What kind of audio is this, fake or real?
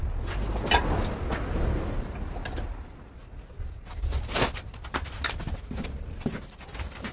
real